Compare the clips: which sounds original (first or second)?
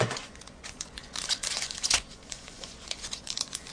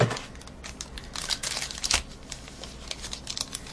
second